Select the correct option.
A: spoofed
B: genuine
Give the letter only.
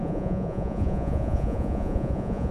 A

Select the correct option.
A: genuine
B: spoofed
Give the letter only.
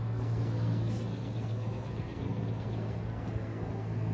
B